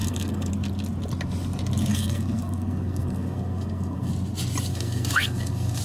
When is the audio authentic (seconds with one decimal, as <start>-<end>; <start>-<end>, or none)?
0.5-1.9; 4.1-4.7